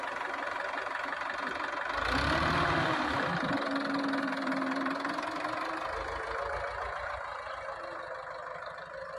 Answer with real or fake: real